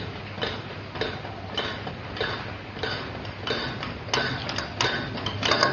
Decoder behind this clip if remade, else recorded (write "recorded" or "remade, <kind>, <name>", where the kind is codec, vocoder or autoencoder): recorded